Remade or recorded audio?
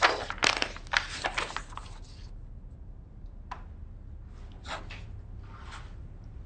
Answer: recorded